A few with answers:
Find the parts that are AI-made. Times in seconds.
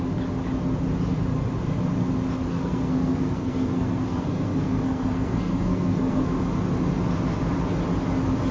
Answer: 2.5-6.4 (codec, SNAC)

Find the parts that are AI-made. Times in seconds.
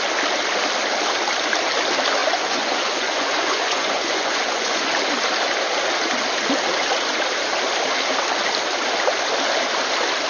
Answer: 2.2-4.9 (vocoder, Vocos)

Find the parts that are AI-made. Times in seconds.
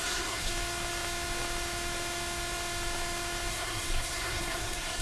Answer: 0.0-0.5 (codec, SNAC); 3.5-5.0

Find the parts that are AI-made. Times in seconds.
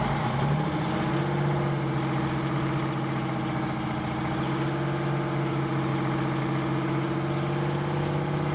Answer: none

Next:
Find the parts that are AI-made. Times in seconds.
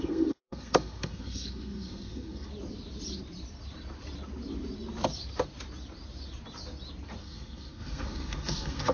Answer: 0.0-2.5 (codec, SNAC); 7.2-8.9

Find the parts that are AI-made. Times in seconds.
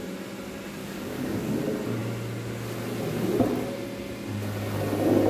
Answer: 0.8-1.5 (codec, DAC)